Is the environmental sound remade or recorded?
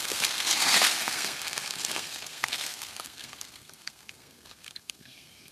remade